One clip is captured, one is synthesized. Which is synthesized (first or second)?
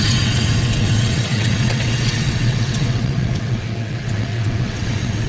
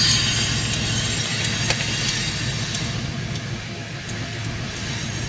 first